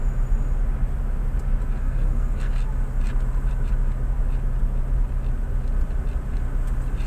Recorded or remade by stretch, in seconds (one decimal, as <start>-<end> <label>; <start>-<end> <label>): 0.0-1.8 recorded; 1.8-2.5 remade; 2.5-7.1 recorded